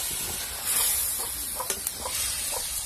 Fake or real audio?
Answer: real